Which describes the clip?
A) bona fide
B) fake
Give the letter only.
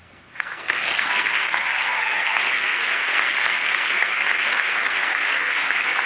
B